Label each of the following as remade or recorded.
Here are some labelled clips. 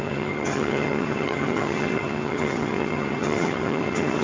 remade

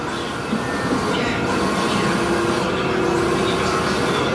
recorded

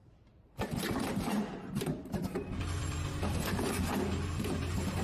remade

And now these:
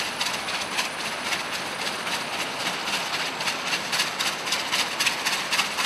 recorded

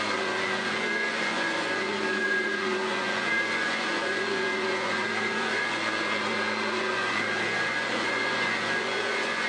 remade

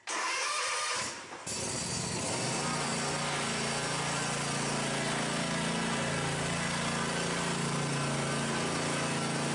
recorded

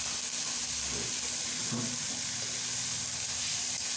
recorded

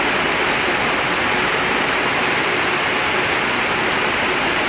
recorded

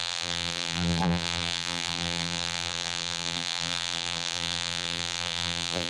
remade